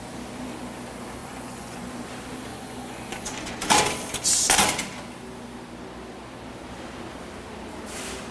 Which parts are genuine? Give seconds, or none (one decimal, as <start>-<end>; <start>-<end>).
0.0-1.2; 1.9-2.5; 3.6-8.3